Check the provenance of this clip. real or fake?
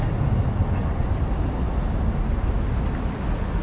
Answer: real